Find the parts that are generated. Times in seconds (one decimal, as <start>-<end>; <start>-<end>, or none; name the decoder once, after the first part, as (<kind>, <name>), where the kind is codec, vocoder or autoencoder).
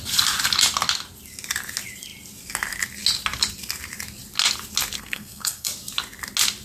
5.0-5.7 (codec, SNAC)